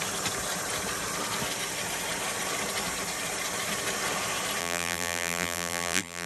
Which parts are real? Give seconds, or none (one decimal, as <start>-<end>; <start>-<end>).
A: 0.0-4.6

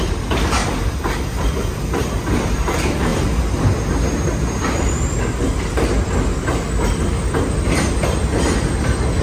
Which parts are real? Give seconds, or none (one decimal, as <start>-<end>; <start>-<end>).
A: 0.0-9.2

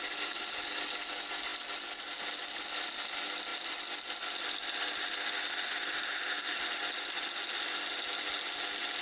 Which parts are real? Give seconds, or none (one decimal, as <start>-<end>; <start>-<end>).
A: 0.0-9.0

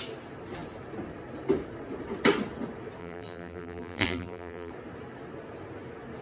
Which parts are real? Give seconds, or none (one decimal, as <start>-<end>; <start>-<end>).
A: 0.0-3.0; 4.7-6.2

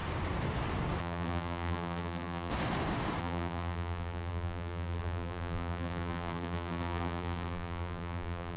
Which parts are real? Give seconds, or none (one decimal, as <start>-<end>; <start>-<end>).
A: 0.0-1.0; 2.5-3.2